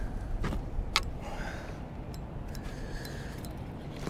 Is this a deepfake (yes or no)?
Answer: no